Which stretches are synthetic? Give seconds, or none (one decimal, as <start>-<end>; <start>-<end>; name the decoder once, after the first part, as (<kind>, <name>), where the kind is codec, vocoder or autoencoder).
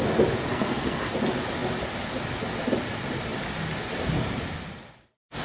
0.5-1.1 (codec, SNAC)